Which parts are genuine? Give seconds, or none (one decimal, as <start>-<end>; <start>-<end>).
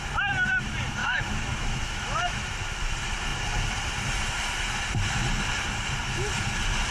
0.0-1.0; 2.5-6.9